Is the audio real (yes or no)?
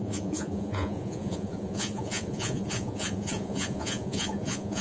no